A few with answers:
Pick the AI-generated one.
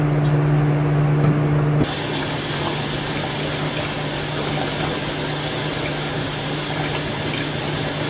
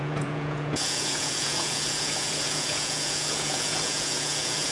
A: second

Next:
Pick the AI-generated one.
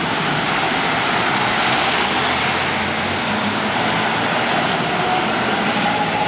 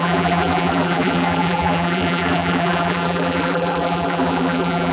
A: second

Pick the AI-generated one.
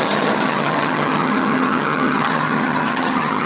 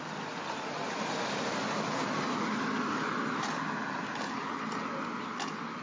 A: first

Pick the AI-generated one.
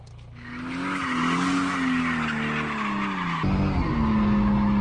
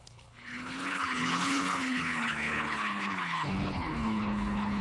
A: second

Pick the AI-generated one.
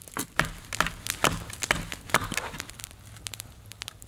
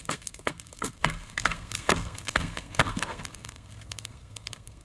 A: second